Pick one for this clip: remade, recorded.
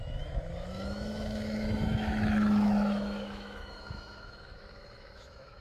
remade